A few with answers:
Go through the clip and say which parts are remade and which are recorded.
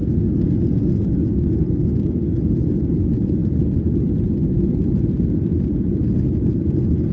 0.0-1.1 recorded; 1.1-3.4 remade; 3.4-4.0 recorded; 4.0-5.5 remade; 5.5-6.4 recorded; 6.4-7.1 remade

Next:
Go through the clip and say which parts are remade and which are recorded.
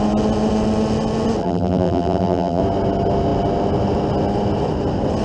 0.0-1.4 recorded; 1.4-2.6 remade; 2.6-5.2 recorded